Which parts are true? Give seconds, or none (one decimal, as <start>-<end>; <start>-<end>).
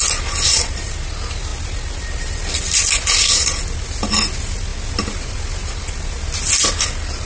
0.0-7.3